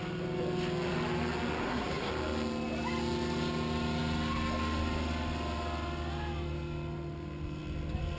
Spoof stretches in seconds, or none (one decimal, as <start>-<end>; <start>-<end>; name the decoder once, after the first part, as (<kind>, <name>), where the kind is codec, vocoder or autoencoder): 1.6-2.1 (codec, SNAC)